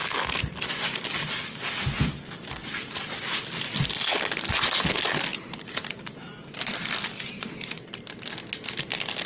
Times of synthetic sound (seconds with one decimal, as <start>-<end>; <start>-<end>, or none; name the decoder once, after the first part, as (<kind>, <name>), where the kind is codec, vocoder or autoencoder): none